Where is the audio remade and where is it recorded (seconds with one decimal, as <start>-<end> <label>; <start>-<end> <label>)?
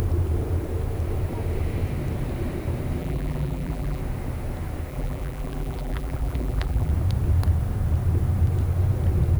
0.0-3.0 recorded; 3.0-4.0 remade; 4.0-4.9 recorded; 4.9-6.9 remade; 6.9-9.4 recorded